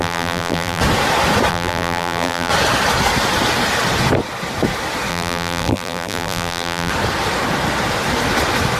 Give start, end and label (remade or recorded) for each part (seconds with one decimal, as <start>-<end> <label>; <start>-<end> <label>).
0.0-0.8 remade; 0.8-1.5 recorded; 1.5-2.5 remade; 2.5-5.1 recorded; 5.1-6.9 remade; 6.9-8.8 recorded